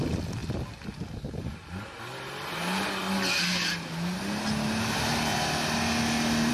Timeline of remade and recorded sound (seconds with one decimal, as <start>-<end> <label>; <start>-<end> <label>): 0.0-6.5 recorded